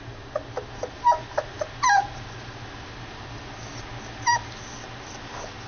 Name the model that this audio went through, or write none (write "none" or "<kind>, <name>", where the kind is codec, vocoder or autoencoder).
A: none